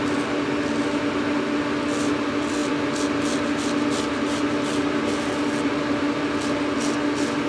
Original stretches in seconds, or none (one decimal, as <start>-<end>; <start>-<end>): 0.0-7.5